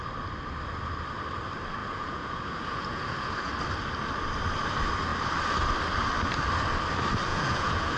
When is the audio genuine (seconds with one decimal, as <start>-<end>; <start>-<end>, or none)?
0.0-1.8; 3.5-7.3